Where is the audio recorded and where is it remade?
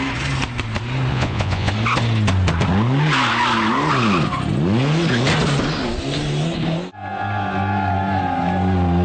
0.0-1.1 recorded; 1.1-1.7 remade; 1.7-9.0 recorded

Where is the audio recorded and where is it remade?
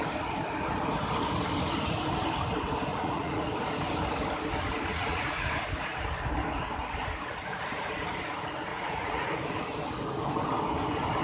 0.0-2.9 recorded; 2.9-3.5 remade; 3.5-4.9 recorded; 4.9-5.5 remade; 5.5-8.7 recorded; 8.7-9.4 remade; 9.4-11.2 recorded